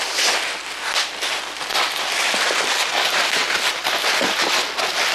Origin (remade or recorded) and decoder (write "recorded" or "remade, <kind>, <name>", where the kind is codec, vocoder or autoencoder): recorded